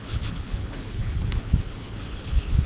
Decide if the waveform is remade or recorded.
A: remade